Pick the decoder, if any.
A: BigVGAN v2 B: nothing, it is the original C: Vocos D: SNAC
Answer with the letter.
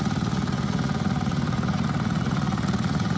C